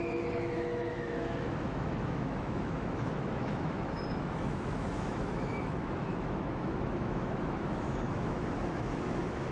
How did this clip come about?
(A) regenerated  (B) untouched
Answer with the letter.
A